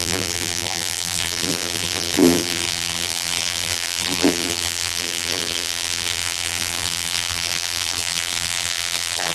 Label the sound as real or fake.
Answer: fake